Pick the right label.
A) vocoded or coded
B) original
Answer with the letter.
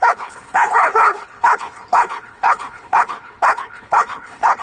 A